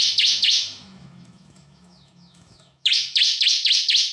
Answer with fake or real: fake